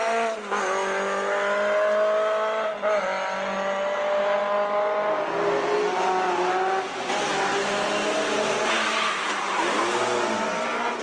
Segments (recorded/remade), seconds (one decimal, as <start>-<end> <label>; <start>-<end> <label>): 0.0-11.0 recorded